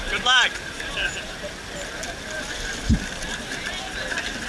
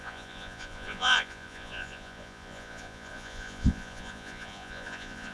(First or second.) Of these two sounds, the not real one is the second